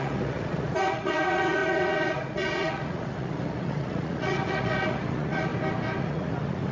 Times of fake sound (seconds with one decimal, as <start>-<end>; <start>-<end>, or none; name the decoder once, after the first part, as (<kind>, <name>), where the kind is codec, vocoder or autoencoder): 0.0-5.5 (vocoder, Vocos); 6.0-6.7